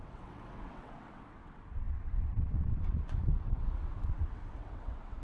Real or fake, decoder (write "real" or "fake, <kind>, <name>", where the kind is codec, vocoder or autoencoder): fake, vocoder, WaveNeXt